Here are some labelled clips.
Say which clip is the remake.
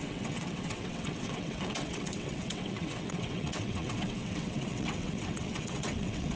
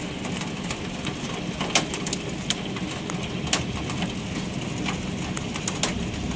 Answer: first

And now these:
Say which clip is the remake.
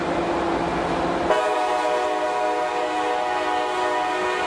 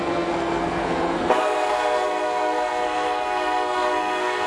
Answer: second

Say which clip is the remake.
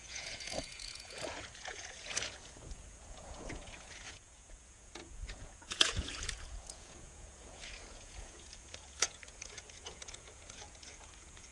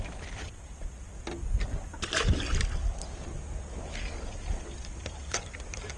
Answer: first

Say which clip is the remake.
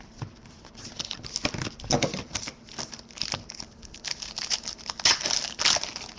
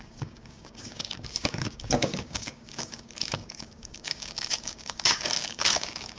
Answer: second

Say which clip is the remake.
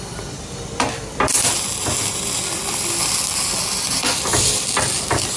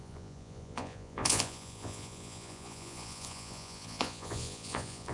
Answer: second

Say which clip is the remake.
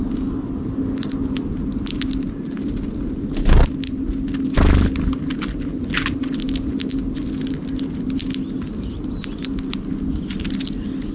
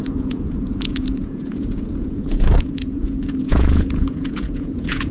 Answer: second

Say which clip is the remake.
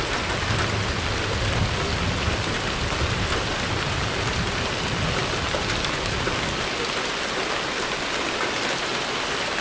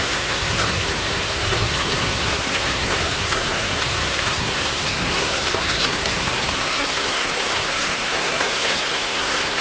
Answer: second